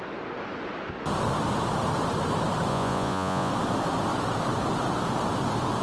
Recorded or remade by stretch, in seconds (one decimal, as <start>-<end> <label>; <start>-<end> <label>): 0.0-2.7 recorded; 2.7-3.5 remade; 3.5-5.8 recorded